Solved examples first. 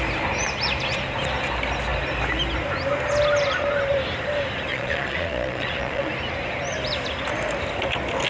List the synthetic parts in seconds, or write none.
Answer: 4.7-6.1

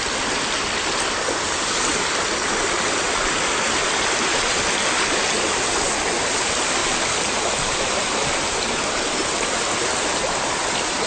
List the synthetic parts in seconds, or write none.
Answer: none

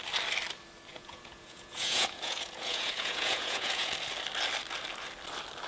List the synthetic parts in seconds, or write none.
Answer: 0.9-3.9

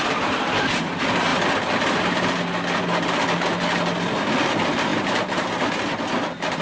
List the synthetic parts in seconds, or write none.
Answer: none

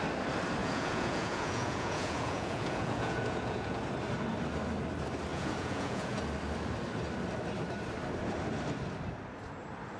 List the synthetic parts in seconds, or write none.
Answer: 0.6-3.8; 5.3-6.2

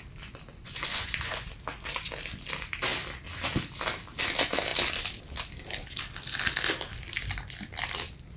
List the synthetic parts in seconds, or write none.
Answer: 0.6-1.5

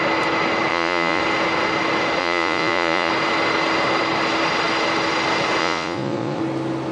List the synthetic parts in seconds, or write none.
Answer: 0.7-1.2; 2.2-3.1; 5.6-6.4